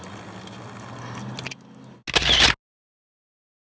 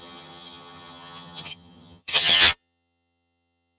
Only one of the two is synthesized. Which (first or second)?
second